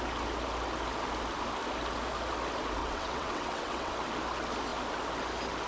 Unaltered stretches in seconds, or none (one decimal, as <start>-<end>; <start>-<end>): 0.0-2.8; 3.9-5.7